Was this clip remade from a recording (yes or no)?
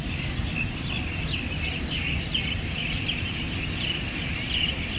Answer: no